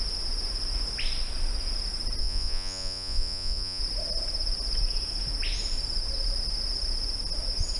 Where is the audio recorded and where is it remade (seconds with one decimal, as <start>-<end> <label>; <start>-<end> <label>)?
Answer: 0.0-2.2 recorded; 2.2-3.8 remade; 3.8-7.8 recorded